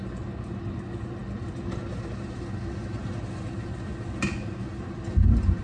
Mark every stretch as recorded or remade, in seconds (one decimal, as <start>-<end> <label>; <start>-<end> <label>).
0.0-5.6 recorded